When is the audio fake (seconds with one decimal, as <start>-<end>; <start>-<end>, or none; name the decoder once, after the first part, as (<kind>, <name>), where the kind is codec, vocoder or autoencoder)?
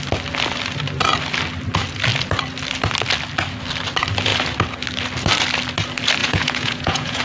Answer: 6.2-7.2 (vocoder, Vocos)